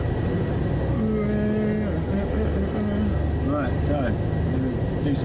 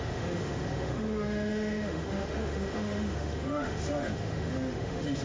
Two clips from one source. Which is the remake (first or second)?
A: second